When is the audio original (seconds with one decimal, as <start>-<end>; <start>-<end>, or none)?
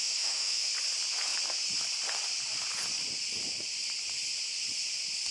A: 0.7-5.3